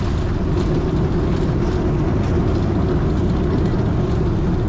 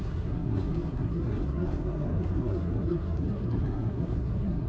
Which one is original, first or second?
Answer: first